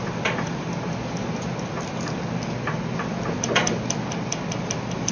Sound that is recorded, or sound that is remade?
recorded